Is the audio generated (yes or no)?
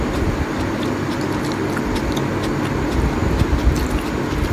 no